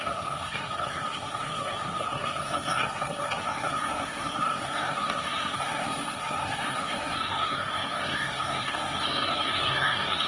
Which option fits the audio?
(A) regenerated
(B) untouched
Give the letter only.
A